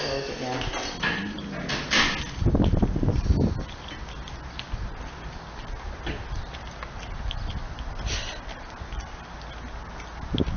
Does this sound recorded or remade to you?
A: recorded